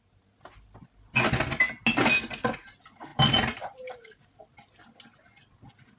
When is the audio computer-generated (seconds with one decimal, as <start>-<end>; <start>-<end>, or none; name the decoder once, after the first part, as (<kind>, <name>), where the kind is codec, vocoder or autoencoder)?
none